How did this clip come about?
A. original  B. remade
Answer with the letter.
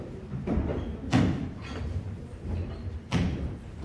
A